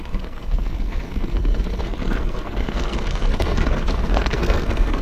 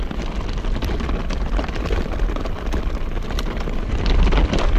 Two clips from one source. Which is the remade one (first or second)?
first